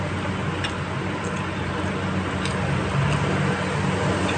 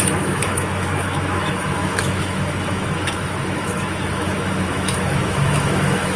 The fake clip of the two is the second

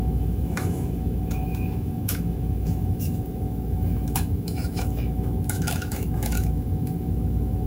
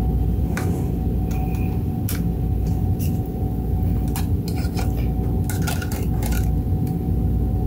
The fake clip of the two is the first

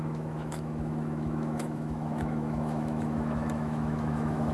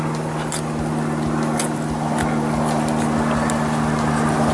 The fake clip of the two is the first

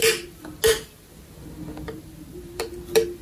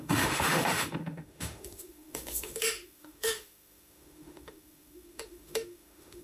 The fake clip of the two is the second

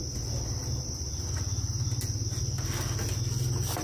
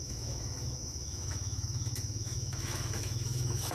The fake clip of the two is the second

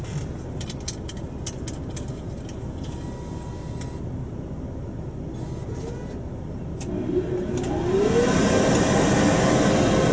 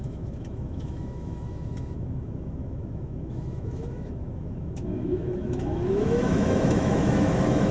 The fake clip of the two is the second